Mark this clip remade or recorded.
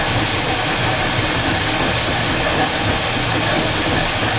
recorded